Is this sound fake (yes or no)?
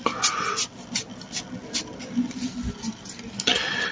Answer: no